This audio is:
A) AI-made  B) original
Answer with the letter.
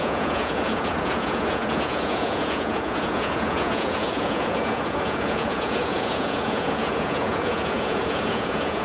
A